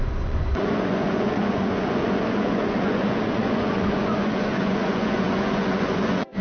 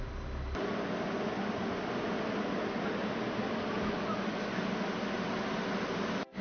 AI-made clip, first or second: first